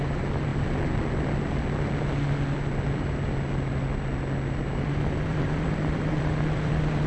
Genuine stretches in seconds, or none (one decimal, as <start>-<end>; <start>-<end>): 0.5-4.8

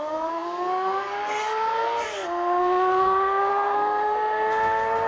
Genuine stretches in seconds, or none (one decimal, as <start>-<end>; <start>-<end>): none